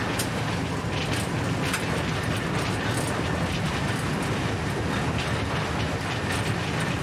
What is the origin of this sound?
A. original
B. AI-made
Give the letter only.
A